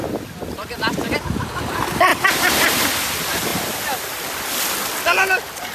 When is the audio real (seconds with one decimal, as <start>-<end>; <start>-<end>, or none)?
0.0-2.1; 2.8-5.7